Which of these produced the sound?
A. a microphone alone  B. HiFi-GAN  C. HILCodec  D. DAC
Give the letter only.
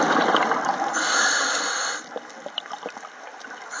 A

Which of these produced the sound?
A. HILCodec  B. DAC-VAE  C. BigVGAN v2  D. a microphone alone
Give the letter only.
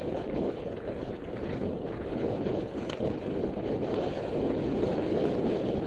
A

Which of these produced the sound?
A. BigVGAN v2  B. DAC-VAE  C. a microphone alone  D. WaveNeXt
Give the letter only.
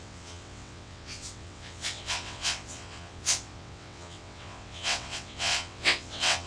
D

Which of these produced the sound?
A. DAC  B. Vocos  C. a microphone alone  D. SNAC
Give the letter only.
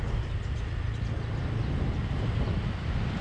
C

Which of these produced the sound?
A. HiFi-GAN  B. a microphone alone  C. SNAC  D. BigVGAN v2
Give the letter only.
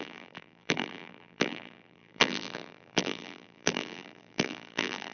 D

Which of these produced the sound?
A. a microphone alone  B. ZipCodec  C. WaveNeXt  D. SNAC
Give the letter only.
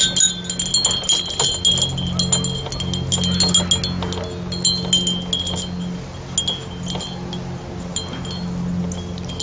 A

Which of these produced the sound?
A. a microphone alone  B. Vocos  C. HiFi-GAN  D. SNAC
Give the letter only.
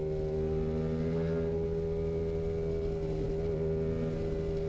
A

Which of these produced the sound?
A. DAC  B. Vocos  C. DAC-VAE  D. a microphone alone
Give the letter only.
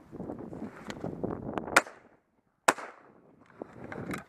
D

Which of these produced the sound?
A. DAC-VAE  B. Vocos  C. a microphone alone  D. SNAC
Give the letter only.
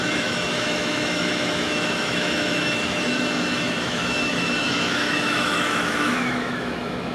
A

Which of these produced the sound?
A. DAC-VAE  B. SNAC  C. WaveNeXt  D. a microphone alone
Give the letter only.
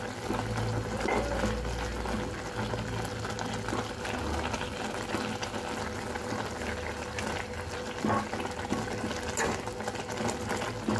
D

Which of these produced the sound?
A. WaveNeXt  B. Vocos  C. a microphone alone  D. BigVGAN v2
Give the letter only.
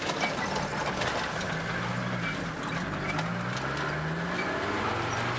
C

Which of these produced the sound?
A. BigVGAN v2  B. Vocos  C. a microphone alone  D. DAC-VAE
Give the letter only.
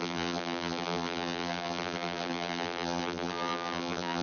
A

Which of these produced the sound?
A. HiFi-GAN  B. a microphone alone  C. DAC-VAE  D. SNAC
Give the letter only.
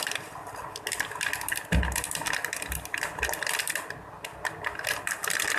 B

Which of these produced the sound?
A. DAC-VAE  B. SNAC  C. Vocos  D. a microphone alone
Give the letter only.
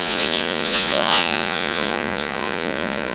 C